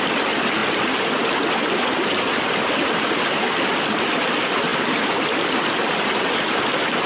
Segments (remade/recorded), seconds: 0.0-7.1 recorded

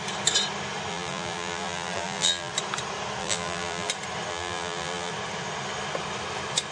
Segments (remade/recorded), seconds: 0.0-0.9 recorded; 0.9-2.5 remade; 2.5-3.2 recorded; 3.2-3.9 remade; 3.9-4.3 recorded; 4.3-5.1 remade; 5.1-6.7 recorded

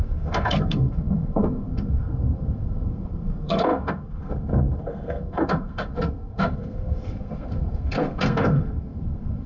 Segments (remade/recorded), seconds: 0.0-9.5 remade